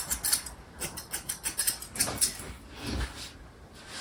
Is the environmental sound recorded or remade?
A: recorded